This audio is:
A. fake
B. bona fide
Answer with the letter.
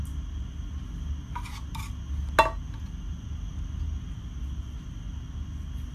B